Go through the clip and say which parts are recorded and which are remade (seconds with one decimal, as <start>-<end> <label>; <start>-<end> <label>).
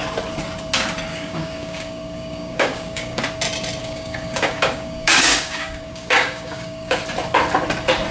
0.0-1.1 recorded; 1.1-3.2 remade; 3.2-3.8 recorded; 3.8-7.0 remade; 7.0-8.1 recorded